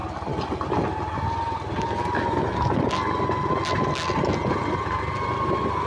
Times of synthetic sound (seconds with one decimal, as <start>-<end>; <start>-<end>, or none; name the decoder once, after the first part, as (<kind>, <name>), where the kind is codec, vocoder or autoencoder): none

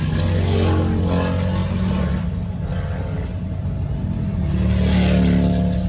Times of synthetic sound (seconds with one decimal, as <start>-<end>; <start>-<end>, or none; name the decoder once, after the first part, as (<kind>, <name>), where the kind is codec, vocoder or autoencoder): none

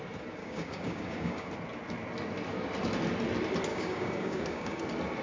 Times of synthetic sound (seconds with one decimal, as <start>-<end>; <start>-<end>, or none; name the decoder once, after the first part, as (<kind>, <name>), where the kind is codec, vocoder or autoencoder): 0.4-1.5 (codec, DAC); 3.7-4.8

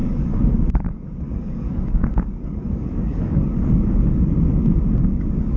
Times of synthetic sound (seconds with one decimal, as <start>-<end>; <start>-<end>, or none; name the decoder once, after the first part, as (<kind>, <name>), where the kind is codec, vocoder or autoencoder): 0.0-3.4 (codec, DAC)

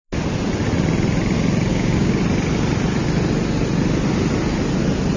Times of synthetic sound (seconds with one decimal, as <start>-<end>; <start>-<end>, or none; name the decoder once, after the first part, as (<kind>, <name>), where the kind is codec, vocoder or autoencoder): 1.7-2.2 (codec, DAC)

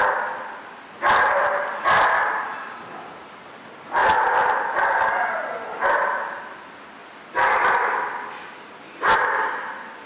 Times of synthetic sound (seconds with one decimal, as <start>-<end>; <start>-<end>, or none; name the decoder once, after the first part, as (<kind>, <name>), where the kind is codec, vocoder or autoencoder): none

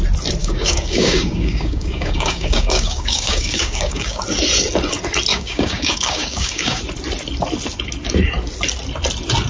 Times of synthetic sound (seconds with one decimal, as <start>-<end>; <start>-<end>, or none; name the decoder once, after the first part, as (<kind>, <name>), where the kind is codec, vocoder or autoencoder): 0.4-4.2 (codec, DAC); 5.3-6.8

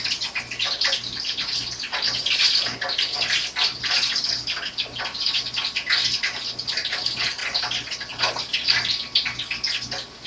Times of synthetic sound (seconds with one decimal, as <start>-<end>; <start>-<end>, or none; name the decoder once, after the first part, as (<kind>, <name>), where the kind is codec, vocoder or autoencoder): none